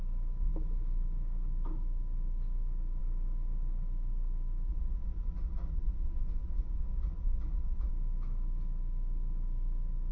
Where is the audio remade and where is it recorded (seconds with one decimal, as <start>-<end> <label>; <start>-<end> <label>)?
0.0-4.7 recorded; 4.7-7.9 remade; 7.9-10.1 recorded